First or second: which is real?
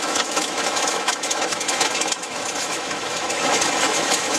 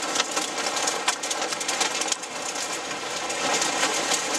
second